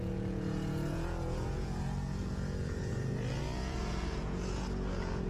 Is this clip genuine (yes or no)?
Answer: no